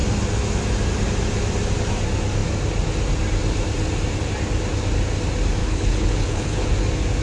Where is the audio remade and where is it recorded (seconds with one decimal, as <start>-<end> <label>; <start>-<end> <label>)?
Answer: 0.0-5.6 recorded; 5.6-6.7 remade; 6.7-7.2 recorded